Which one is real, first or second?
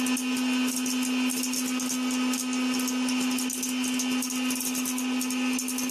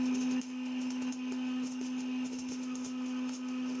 first